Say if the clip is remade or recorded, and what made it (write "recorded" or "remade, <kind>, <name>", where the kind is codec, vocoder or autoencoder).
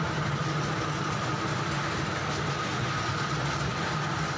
recorded